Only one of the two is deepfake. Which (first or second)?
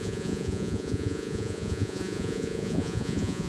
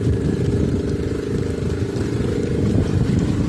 first